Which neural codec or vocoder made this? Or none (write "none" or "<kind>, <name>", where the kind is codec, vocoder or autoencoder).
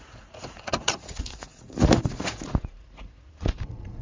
vocoder, Vocos